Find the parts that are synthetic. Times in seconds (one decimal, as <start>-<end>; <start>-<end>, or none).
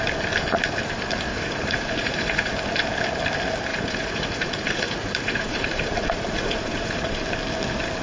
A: 1.3-2.5; 3.7-7.2